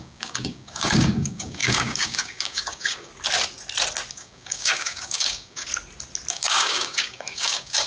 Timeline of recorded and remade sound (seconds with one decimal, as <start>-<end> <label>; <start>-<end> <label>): 0.0-3.1 remade; 3.1-4.1 recorded; 4.1-5.7 remade; 5.7-6.3 recorded; 6.3-7.9 remade